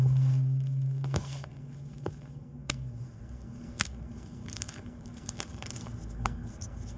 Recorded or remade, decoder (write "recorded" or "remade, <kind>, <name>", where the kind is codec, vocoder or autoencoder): remade, codec, SNAC